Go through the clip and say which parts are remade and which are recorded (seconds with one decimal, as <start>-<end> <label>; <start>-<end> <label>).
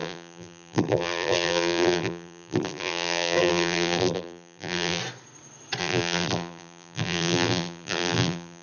0.0-5.0 remade; 5.0-5.8 recorded; 5.8-8.6 remade